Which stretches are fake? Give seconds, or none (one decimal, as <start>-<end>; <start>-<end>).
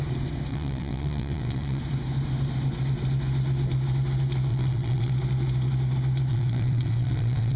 0.5-1.8; 4.5-5.1; 6.3-7.6